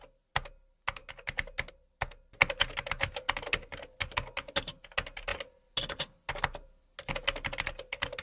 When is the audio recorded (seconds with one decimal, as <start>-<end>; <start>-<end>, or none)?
0.0-8.2